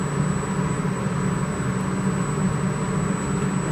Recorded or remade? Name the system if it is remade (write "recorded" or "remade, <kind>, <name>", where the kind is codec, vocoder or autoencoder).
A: recorded